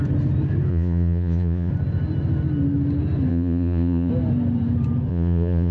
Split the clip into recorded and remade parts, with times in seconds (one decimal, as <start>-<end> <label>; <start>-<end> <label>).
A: 0.0-0.7 recorded; 0.7-1.7 remade; 1.7-3.3 recorded; 3.3-4.1 remade; 4.1-5.1 recorded; 5.1-5.7 remade